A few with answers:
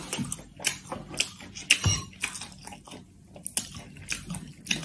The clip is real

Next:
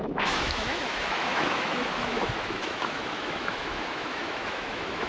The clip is fake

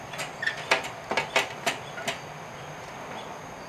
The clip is real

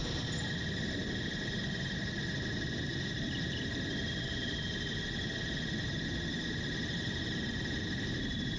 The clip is real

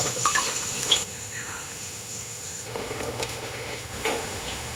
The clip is fake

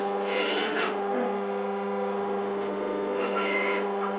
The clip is fake